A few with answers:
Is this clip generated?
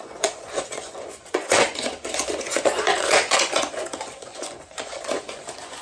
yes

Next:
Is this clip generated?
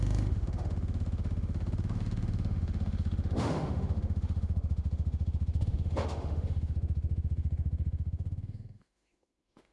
yes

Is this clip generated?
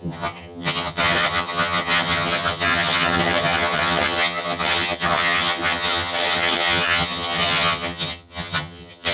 yes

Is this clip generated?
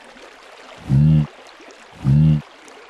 no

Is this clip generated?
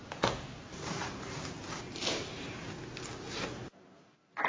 no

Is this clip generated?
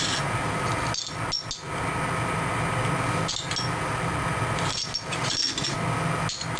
no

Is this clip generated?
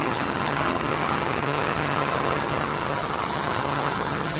yes